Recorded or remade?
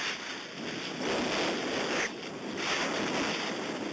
recorded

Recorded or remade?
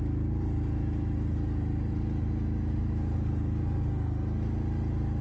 recorded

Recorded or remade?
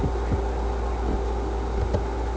recorded